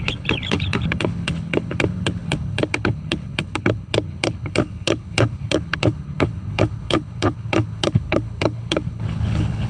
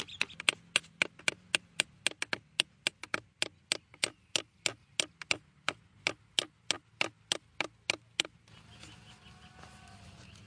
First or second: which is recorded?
second